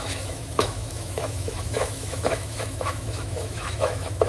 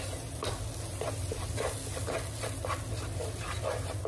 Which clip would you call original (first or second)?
second